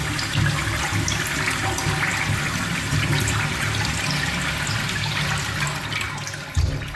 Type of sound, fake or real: real